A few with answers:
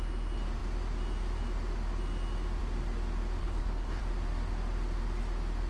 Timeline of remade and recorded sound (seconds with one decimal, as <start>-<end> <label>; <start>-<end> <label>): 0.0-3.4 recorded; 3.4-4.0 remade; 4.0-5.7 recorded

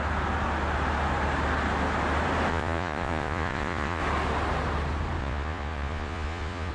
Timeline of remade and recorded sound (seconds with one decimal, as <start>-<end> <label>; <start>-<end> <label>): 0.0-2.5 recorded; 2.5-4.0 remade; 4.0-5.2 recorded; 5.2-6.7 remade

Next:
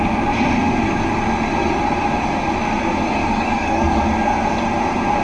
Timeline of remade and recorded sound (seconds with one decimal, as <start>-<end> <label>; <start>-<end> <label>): 0.0-3.2 recorded; 3.2-4.0 remade; 4.0-5.2 recorded